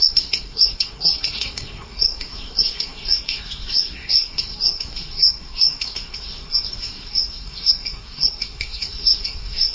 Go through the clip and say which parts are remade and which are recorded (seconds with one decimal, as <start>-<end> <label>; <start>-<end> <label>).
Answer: 0.0-9.7 remade